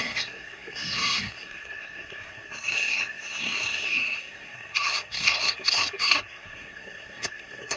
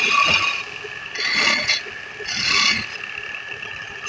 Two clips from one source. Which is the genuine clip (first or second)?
second